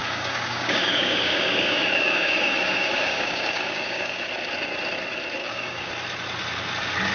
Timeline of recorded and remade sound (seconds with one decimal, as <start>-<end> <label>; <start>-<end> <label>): 0.0-4.3 remade; 4.3-5.4 recorded; 5.4-5.9 remade; 5.9-7.1 recorded